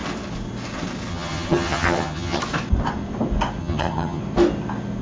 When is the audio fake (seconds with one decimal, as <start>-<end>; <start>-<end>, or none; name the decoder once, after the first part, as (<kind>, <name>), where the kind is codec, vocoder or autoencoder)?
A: 1.1-2.4 (vocoder, HiFi-GAN); 3.6-4.2